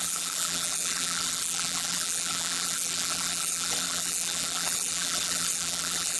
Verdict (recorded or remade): remade